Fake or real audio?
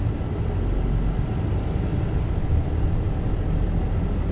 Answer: real